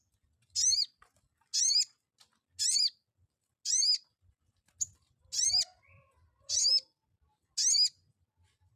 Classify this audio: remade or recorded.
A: recorded